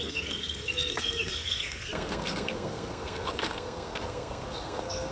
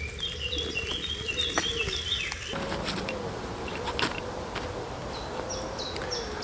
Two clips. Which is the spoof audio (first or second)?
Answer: first